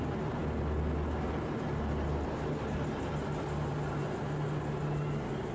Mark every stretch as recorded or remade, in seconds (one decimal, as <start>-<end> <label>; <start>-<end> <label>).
0.0-5.5 recorded